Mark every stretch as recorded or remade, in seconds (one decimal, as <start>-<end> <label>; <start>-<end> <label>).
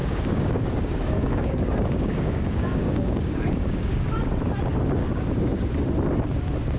0.0-4.1 remade; 4.1-5.0 recorded; 5.0-5.7 remade; 5.7-6.8 recorded